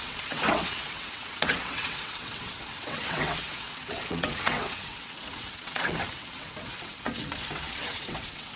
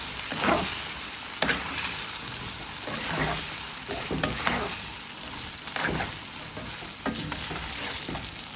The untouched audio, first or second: second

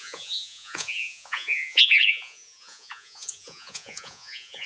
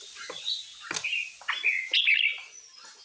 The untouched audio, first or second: second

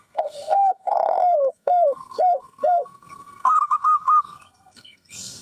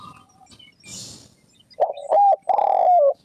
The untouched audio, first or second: second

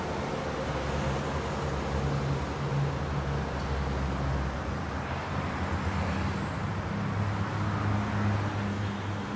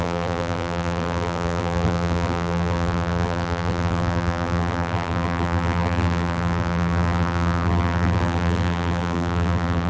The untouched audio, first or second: first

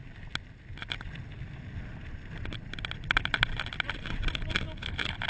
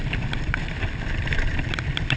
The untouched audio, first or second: first